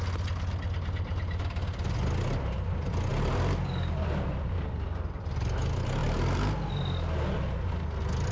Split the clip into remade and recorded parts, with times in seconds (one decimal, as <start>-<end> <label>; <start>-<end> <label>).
0.0-3.1 recorded; 3.1-5.4 remade; 5.4-6.0 recorded; 6.0-6.7 remade; 6.7-8.3 recorded